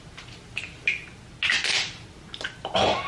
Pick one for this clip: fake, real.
real